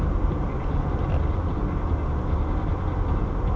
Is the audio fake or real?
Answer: real